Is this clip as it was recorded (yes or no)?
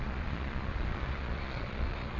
no